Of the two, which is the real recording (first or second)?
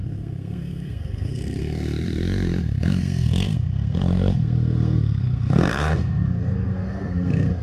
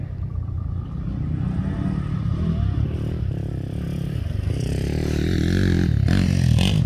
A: second